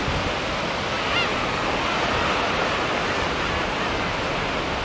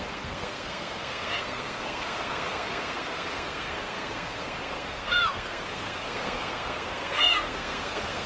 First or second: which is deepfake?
second